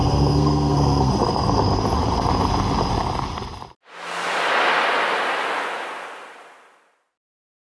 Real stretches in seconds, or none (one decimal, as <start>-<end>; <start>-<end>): 1.1-7.7